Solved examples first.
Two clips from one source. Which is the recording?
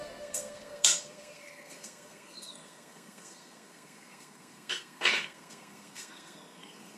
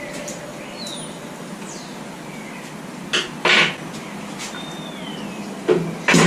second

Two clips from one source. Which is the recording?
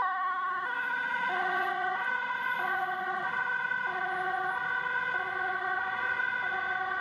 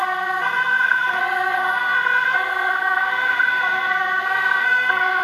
first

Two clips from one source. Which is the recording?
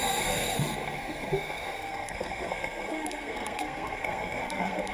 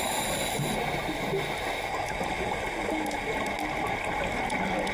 second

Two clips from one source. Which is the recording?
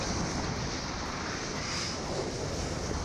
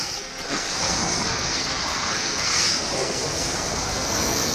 first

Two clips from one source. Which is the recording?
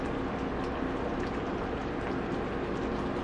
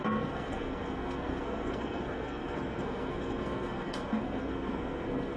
first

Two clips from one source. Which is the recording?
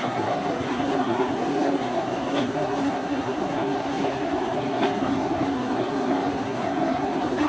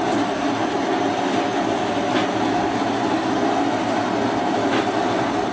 second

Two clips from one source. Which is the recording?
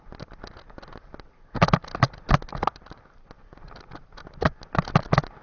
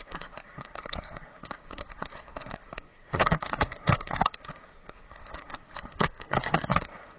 first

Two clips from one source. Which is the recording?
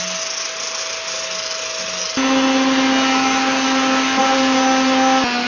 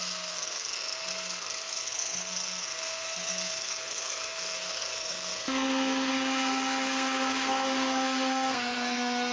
first